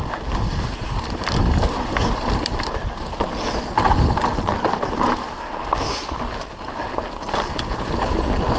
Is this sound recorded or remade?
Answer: recorded